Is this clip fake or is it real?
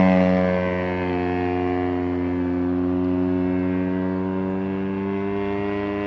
real